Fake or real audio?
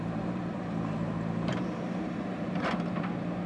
fake